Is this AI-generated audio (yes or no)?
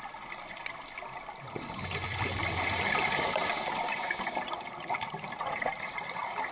no